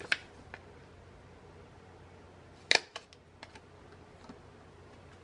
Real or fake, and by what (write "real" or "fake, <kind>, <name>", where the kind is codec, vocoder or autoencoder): real